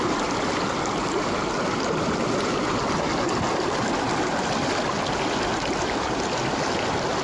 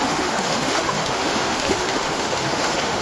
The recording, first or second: first